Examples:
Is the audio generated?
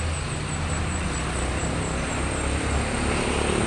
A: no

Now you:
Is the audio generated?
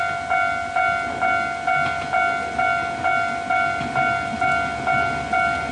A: no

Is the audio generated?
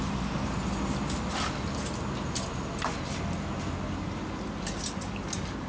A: no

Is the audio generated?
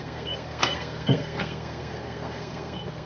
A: yes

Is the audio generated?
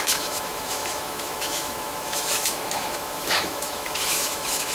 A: yes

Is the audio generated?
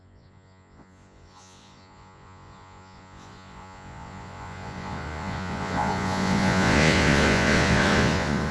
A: yes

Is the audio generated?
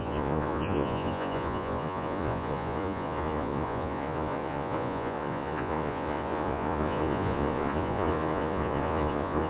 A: yes